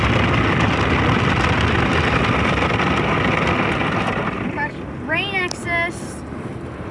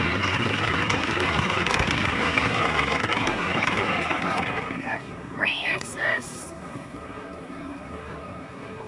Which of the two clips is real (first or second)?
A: first